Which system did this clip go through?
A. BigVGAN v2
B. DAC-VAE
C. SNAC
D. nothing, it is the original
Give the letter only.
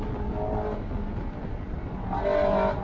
D